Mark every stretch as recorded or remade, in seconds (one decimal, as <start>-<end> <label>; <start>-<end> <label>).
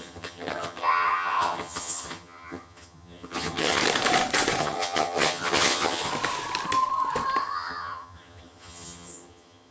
0.0-3.8 remade; 3.8-4.6 recorded; 4.6-6.1 remade; 6.1-7.4 recorded; 7.4-9.7 remade